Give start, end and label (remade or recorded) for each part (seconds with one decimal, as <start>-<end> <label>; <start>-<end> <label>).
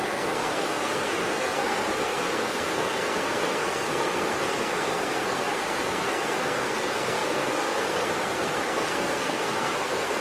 0.0-10.2 remade